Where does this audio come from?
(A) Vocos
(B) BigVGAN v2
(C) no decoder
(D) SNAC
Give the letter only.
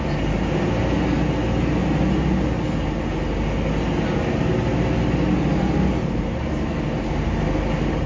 C